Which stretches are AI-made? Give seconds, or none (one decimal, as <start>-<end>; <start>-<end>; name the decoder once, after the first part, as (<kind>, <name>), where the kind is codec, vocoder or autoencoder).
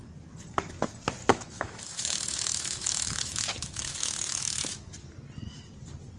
1.2-4.9 (autoencoder, DAC-VAE)